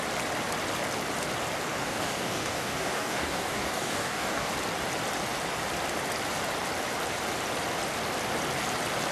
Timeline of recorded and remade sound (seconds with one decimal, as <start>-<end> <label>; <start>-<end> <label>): 0.0-1.7 recorded; 1.7-4.5 remade; 4.5-9.1 recorded